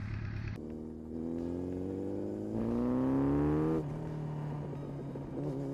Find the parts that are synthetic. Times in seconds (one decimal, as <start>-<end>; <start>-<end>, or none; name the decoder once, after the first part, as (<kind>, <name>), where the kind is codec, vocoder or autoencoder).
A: none